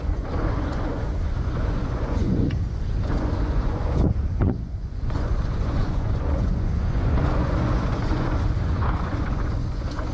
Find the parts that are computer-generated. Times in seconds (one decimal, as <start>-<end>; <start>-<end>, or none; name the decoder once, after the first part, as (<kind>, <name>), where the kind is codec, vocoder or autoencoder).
0.0-10.1 (vocoder, Vocos)